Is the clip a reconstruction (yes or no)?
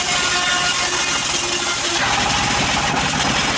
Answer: no